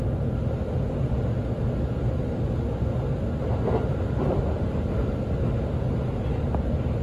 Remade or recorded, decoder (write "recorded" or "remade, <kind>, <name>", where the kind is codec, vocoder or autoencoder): recorded